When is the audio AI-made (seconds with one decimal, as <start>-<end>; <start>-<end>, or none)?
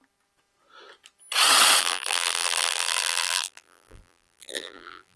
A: 1.8-5.2